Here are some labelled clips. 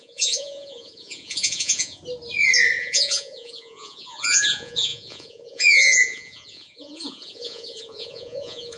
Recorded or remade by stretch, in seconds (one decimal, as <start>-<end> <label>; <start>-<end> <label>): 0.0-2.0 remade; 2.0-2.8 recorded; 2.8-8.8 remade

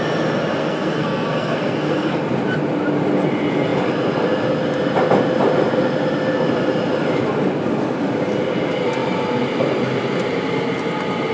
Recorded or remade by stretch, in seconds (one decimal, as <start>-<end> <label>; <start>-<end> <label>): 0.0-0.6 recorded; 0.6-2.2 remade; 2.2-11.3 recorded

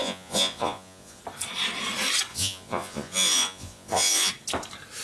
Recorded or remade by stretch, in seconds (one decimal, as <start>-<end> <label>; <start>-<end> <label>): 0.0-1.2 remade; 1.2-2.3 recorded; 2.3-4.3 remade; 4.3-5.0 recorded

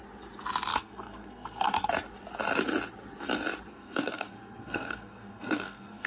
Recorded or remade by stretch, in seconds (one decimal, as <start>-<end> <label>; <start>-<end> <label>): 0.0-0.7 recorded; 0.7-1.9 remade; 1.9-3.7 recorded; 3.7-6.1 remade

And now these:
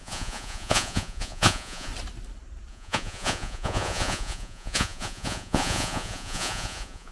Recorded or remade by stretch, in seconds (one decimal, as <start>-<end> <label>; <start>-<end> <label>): 0.0-1.9 remade; 1.9-2.7 recorded; 2.7-7.1 remade

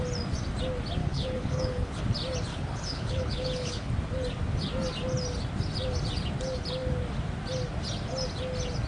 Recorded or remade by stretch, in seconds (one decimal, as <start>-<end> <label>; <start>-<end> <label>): 0.0-1.0 recorded; 1.0-2.0 remade; 2.0-2.5 recorded; 2.5-3.9 remade; 3.9-8.9 recorded